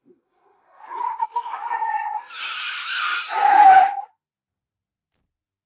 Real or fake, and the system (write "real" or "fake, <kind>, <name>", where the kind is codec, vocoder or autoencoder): real